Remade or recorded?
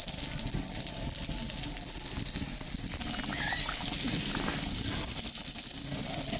recorded